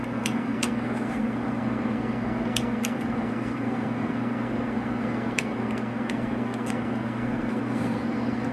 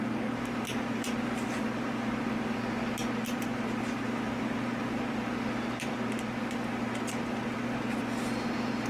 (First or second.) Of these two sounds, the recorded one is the second